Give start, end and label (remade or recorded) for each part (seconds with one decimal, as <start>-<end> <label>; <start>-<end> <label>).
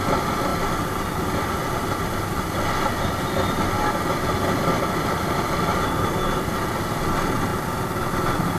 0.0-8.6 recorded